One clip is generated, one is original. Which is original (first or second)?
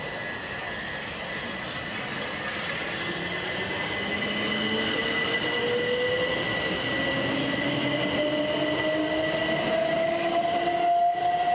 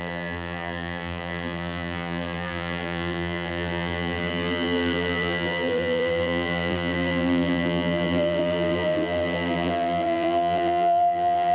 first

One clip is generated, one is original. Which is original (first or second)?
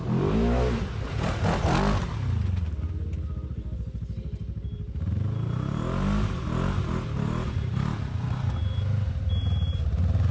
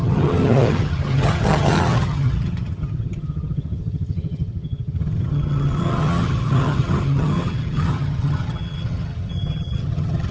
first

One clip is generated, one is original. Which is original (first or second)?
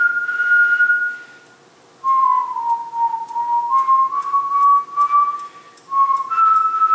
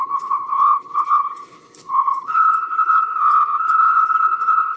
first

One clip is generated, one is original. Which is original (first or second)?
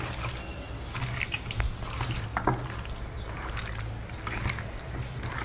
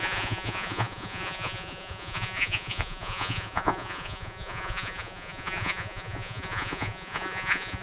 first